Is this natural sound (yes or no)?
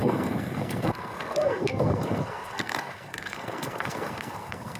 no